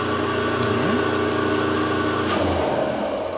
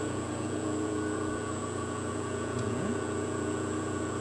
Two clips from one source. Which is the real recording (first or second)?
first